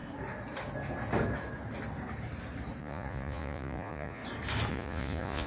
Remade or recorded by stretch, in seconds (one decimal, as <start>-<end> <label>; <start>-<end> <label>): 0.0-2.8 recorded; 2.8-4.2 remade; 4.2-4.7 recorded; 4.7-5.5 remade